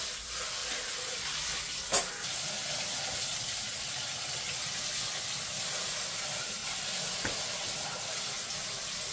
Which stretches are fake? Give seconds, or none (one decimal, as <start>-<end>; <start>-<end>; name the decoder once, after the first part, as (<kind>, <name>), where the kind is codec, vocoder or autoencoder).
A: none